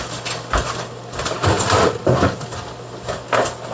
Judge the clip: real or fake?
real